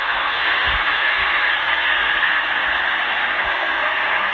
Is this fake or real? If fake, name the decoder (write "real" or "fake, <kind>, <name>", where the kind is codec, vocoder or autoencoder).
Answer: fake, codec, SNAC